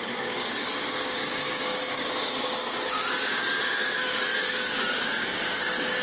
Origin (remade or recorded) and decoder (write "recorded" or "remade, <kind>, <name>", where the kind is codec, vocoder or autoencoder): remade, codec, DAC